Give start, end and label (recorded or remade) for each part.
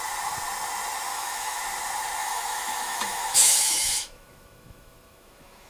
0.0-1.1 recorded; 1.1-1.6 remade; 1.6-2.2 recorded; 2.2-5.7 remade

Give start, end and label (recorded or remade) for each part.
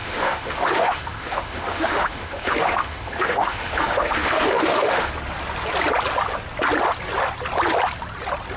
0.0-5.1 remade; 5.1-8.6 recorded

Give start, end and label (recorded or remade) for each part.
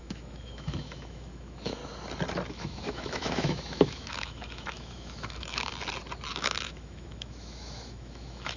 0.0-1.8 remade; 1.8-2.5 recorded; 2.5-5.7 remade; 5.7-6.3 recorded; 6.3-8.6 remade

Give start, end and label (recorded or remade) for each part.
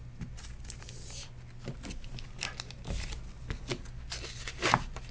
0.0-5.1 recorded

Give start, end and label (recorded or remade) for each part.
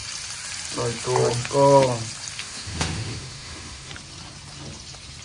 0.0-2.4 recorded; 2.4-3.9 remade; 3.9-5.2 recorded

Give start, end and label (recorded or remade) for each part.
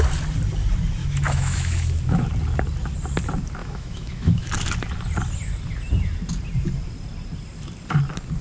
0.0-1.0 recorded; 1.0-2.3 remade; 2.3-3.6 recorded; 3.6-4.5 remade; 4.5-8.4 recorded